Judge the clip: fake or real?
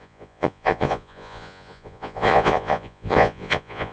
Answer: fake